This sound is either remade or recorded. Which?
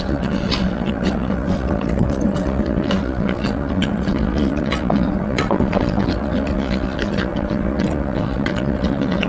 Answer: remade